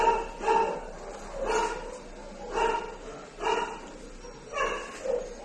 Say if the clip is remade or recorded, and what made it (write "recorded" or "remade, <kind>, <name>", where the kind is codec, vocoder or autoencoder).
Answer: recorded